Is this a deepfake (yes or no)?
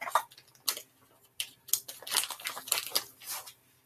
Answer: no